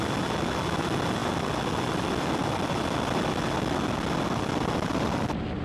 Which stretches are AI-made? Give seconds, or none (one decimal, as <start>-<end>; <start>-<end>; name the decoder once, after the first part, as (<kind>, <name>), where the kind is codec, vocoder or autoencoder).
none